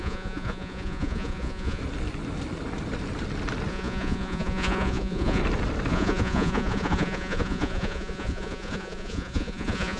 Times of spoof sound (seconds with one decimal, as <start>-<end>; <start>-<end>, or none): 0.0-1.8; 3.7-5.4; 5.9-10.0